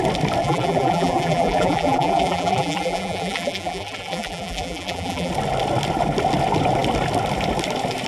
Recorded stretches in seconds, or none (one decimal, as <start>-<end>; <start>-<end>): 0.0-0.4; 5.3-8.1